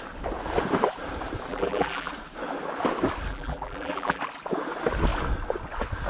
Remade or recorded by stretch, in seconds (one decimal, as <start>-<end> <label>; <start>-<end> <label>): 0.0-1.5 recorded; 1.5-2.1 remade; 2.1-3.3 recorded; 3.3-4.2 remade; 4.2-6.1 recorded